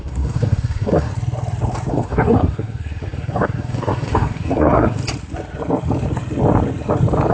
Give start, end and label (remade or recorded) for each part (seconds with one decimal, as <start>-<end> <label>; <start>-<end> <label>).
0.0-1.1 remade; 1.1-1.9 recorded; 1.9-5.0 remade; 5.0-7.3 recorded